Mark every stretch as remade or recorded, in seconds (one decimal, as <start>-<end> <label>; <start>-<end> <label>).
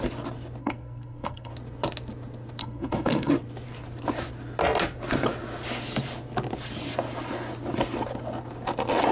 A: 0.0-0.6 recorded; 0.6-1.5 remade; 1.5-2.6 recorded; 2.6-3.3 remade; 3.3-9.1 recorded